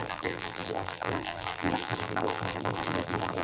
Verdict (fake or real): fake